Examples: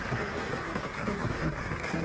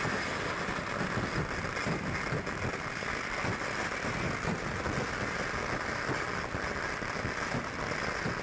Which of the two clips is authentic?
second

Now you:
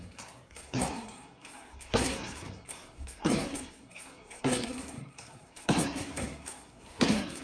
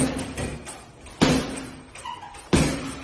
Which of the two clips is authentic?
second